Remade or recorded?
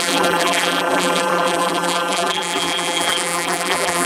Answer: remade